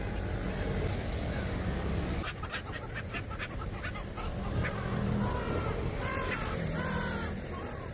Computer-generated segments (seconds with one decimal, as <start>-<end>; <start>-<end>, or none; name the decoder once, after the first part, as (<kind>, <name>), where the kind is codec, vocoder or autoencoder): none